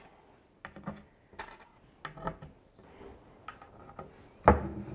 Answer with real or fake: real